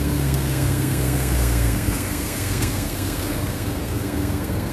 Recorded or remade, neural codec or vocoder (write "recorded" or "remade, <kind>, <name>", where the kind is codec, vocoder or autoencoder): remade, codec, SNAC